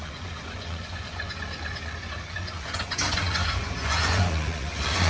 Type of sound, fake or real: fake